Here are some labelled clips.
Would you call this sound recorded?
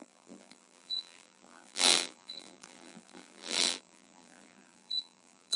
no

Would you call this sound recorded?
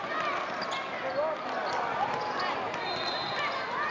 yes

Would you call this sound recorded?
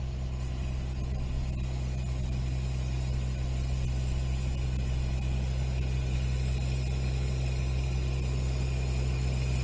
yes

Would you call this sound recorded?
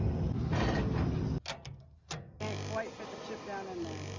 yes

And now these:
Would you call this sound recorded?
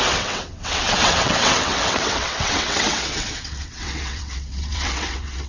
no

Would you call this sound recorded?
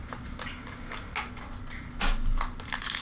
yes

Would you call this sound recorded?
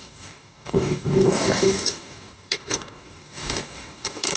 no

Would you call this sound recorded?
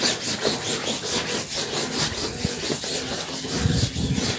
yes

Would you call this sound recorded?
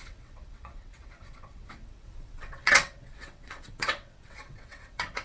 no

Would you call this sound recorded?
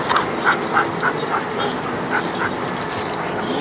yes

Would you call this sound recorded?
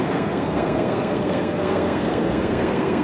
no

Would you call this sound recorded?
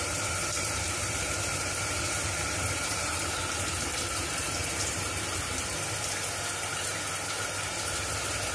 no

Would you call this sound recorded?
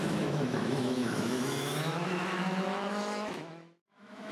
no